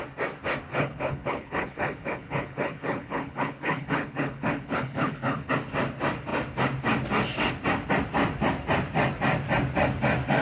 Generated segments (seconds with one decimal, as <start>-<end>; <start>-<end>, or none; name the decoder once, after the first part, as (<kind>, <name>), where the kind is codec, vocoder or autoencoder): 0.7-5.5 (codec, HILCodec)